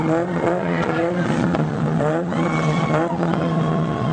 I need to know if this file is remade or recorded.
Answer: remade